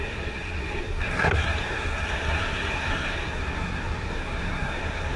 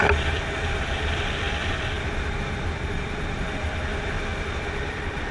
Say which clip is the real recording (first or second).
second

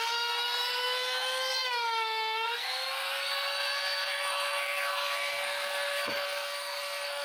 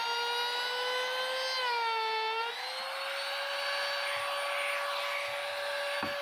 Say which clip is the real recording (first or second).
second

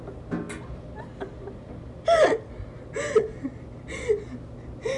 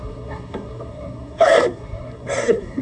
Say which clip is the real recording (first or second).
first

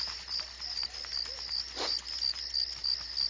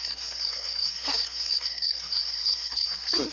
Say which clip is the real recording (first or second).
first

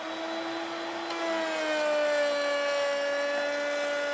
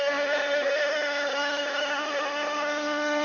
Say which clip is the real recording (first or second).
first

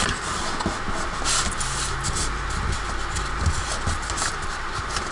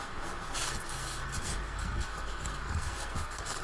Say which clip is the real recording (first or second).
first